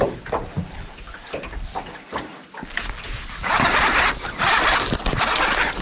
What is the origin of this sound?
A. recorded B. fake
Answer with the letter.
A